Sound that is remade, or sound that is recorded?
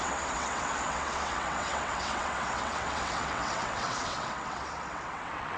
remade